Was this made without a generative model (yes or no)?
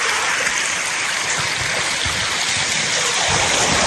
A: yes